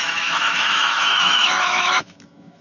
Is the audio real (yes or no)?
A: no